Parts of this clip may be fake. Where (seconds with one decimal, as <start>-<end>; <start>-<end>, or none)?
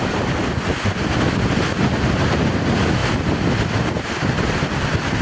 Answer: none